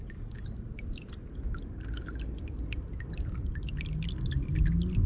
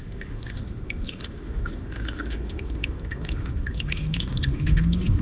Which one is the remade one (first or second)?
second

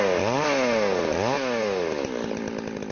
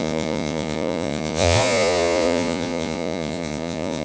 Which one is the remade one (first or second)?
second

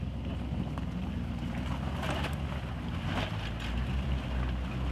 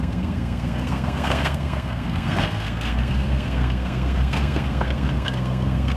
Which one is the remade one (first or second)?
second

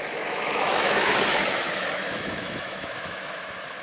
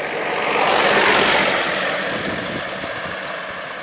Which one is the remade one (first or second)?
first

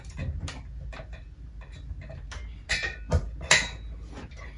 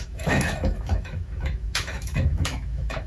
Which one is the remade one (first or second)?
second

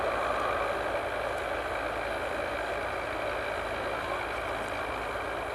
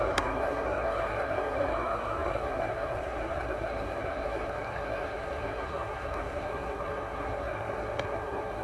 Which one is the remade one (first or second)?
second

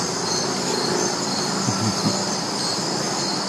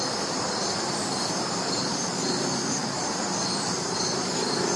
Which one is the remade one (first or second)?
second